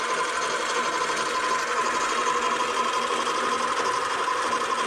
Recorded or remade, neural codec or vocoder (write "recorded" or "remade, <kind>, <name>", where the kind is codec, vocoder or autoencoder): recorded